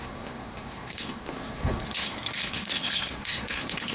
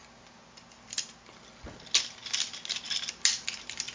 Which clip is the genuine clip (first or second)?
second